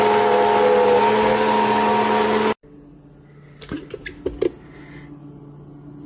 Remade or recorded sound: recorded